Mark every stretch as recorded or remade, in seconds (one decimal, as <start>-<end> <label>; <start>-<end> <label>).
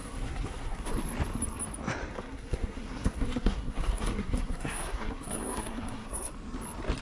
0.0-0.9 remade; 0.9-2.1 recorded; 2.1-6.3 remade; 6.3-7.0 recorded